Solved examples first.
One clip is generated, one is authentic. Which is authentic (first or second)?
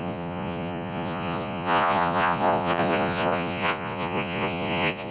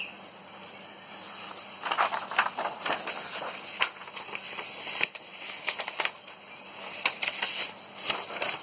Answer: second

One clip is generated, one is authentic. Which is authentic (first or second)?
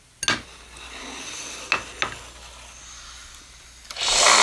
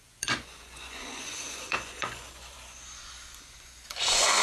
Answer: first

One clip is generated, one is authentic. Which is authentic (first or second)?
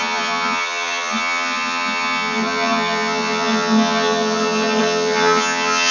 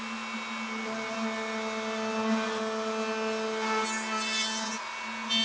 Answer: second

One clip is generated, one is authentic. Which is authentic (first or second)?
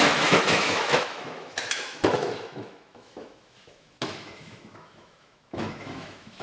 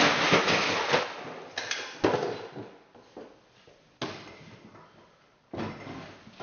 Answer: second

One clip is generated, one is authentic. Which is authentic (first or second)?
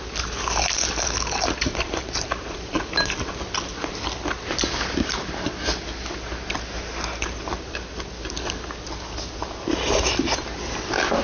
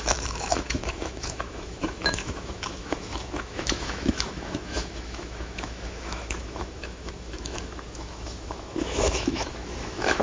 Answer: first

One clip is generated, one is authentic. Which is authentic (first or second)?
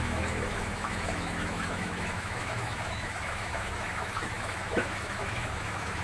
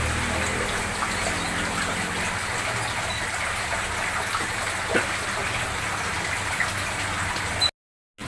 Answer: second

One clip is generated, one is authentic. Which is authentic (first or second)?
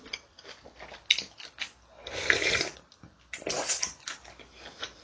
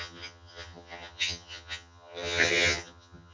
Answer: first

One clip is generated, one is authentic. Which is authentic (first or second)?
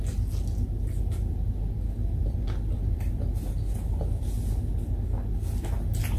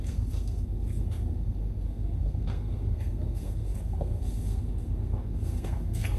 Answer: first